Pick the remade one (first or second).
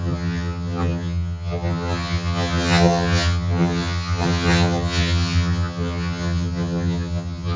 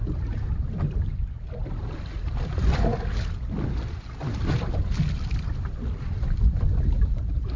first